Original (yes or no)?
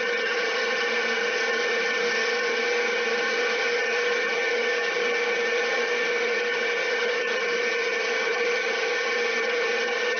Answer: no